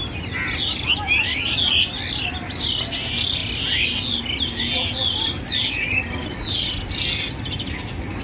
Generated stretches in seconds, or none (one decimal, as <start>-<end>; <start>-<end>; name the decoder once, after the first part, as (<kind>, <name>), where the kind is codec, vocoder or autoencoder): none